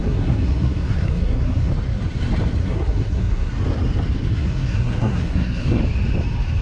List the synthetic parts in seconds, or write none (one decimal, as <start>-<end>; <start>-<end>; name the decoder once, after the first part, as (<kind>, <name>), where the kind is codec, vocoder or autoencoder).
0.0-1.7 (codec, SNAC); 2.6-3.5; 4.3-5.8